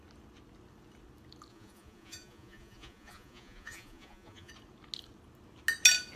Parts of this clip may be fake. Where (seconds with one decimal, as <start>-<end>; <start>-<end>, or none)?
1.5-4.5